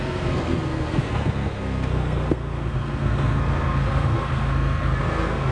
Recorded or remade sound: remade